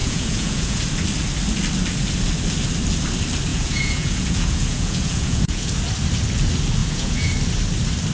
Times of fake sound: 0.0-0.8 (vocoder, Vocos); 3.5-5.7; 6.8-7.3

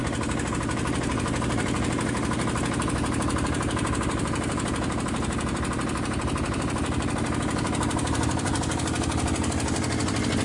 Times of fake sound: 0.5-10.4 (vocoder, BigVGAN v2)